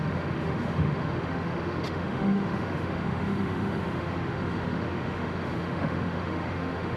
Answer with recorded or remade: remade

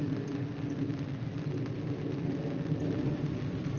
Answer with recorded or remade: recorded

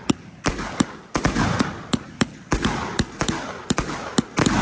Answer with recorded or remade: recorded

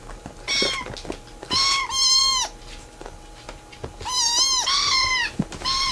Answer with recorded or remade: recorded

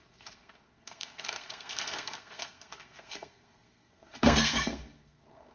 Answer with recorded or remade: remade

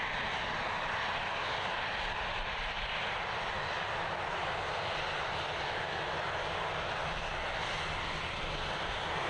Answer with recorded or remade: recorded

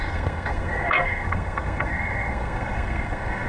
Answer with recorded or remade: remade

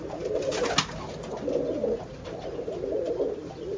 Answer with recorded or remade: recorded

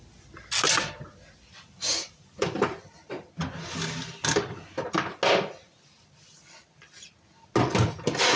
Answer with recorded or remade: recorded